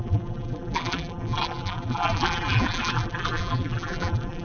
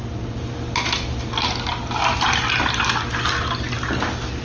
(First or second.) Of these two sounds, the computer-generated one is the first